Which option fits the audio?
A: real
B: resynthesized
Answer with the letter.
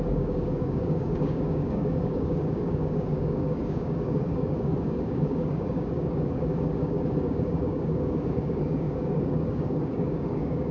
B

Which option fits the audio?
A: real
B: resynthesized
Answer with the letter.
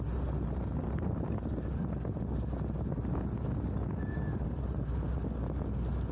A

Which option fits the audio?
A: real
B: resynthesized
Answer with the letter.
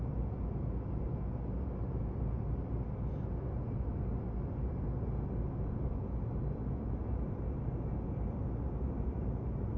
A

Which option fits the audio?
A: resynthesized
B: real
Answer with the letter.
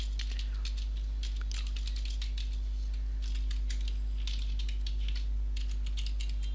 B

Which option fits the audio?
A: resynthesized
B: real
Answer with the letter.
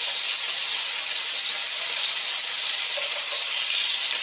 B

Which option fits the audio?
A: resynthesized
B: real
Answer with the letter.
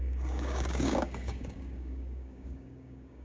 A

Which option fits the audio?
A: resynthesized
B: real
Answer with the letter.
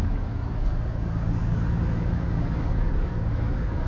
A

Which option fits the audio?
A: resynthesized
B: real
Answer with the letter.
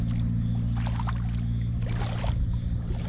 B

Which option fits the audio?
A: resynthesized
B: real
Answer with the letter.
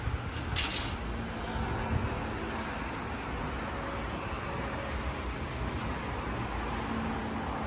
B